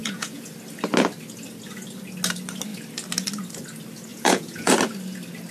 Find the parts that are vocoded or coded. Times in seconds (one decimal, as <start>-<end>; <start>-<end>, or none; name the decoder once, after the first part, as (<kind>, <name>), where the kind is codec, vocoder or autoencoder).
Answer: 0.0-0.5 (vocoder, Vocos); 4.1-4.7